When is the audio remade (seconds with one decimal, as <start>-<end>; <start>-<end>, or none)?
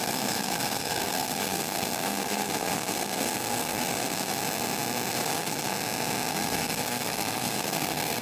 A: 0.0-4.4; 5.1-5.7; 6.3-8.2